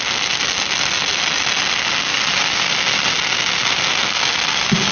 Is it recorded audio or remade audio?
recorded